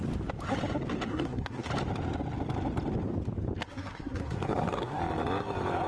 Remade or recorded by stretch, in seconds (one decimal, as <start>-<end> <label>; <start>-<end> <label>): 0.0-1.1 recorded; 1.1-1.7 remade; 1.7-3.6 recorded; 3.6-5.0 remade; 5.0-5.9 recorded